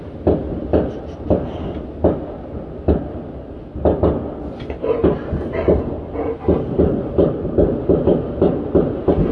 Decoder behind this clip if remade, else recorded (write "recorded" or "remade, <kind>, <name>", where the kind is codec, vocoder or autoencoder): recorded